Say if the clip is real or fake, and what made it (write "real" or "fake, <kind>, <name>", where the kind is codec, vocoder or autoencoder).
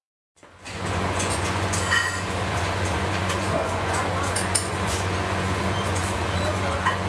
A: fake, vocoder, Vocos